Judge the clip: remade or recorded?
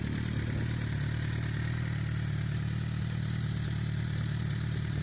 recorded